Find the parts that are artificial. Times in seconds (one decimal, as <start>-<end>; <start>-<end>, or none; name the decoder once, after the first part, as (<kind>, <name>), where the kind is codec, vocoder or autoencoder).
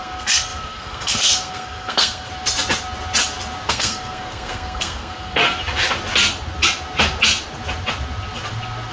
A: 0.0-2.3 (codec, SNAC); 3.7-5.4